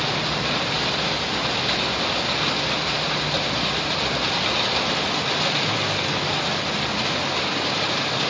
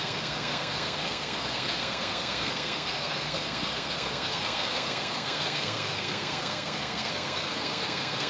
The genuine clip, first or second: first